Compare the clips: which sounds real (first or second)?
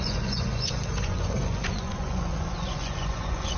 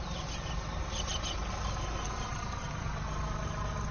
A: second